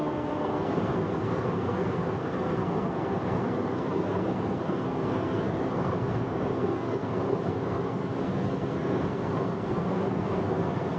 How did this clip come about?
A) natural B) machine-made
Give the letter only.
B